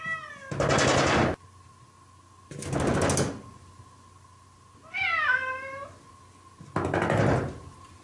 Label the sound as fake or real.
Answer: real